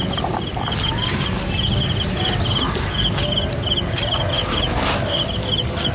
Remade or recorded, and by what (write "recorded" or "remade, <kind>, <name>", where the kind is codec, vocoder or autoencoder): recorded